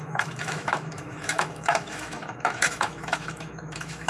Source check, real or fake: fake